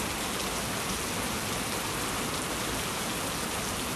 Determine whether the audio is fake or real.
real